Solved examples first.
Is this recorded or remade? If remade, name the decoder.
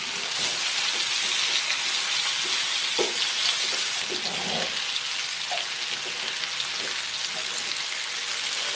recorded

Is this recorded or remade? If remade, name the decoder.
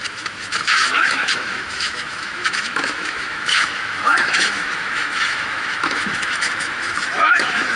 remade, autoencoder, DAC-VAE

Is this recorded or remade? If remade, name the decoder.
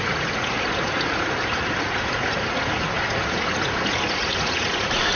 remade, vocoder, Vocos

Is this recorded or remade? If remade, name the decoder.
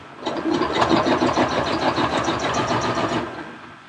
remade, vocoder, Vocos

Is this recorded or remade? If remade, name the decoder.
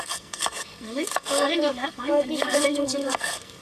remade, codec, SNAC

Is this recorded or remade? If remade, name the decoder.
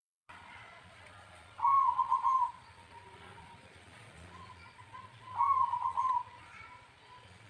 remade, vocoder, Vocos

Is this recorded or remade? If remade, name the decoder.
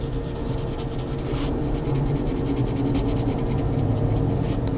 recorded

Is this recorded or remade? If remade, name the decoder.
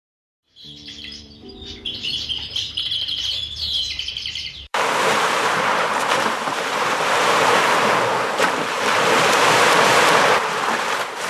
remade, vocoder, BigVGAN v2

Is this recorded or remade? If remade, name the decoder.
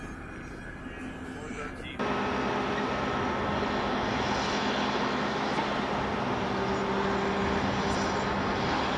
recorded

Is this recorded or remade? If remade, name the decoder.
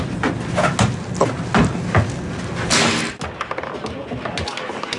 recorded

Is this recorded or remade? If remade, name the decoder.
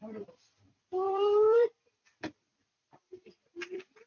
remade, vocoder, BigVGAN v2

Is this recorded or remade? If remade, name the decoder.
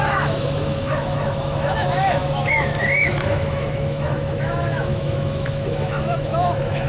remade, autoencoder, DAC-VAE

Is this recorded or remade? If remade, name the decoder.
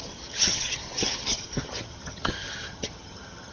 remade, vocoder, HiFi-GAN